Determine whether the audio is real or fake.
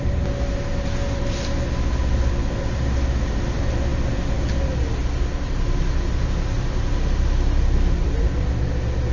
real